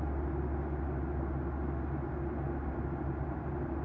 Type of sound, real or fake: real